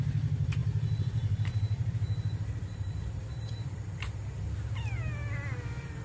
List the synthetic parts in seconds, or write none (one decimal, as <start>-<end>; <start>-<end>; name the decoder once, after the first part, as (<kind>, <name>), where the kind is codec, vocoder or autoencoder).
0.6-4.2 (vocoder, BigVGAN v2)